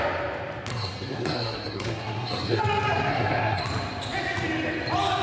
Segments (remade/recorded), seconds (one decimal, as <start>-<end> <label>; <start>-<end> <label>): 0.0-0.7 recorded; 0.7-2.6 remade; 2.6-3.1 recorded; 3.1-3.6 remade; 3.6-5.2 recorded